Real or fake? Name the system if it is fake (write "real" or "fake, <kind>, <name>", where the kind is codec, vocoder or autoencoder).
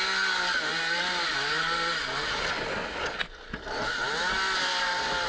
real